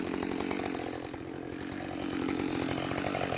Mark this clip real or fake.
real